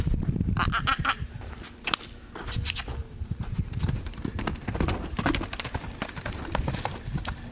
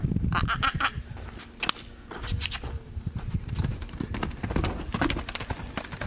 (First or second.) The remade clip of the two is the first